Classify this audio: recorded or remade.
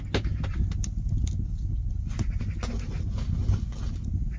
recorded